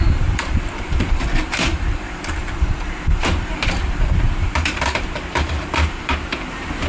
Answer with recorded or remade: remade